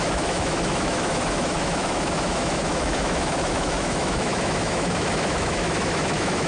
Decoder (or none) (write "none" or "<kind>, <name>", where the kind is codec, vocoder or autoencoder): autoencoder, DAC-VAE